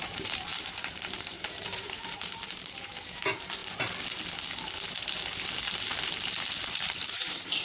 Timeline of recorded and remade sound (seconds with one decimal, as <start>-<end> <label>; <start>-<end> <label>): 0.0-3.6 remade; 3.6-6.8 recorded; 6.8-7.6 remade